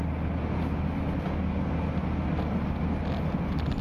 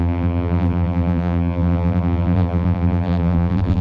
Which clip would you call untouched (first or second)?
first